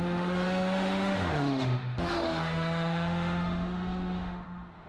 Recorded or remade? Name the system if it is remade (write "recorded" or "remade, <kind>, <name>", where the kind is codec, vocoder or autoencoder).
remade, autoencoder, DAC-VAE